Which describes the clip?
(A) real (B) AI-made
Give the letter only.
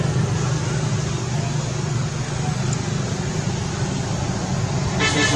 A